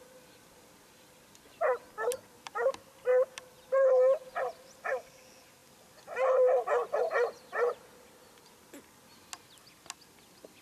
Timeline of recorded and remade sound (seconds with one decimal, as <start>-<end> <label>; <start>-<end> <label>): 0.0-10.6 recorded